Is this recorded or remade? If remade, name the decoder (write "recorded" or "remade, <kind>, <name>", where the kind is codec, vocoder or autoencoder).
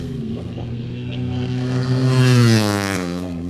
remade, codec, SNAC